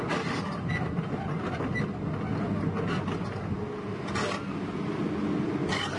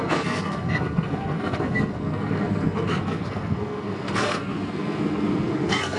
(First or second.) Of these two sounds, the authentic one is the first